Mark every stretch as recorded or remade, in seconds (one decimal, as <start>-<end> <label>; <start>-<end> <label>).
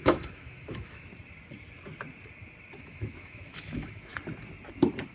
0.0-1.1 remade; 1.1-2.8 recorded; 2.8-4.1 remade; 4.1-5.1 recorded